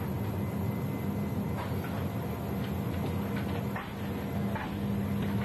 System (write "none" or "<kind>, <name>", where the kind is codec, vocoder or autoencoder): none